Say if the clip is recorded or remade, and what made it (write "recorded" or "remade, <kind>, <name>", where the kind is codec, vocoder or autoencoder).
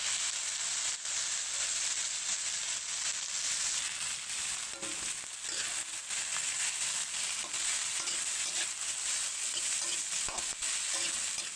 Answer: recorded